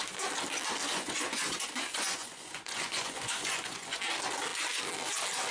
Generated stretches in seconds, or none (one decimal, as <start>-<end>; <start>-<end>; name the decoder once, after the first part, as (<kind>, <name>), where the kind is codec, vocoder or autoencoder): 0.8-4.0 (vocoder, Vocos)